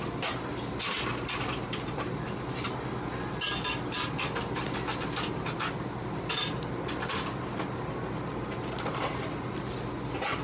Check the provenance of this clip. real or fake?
real